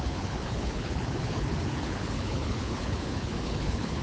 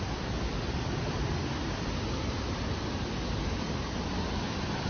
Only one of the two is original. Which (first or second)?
second